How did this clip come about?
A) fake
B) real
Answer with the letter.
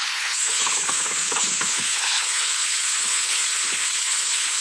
A